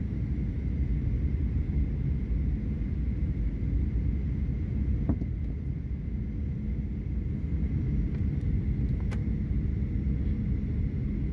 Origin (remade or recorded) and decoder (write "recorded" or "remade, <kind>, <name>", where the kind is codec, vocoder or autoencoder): recorded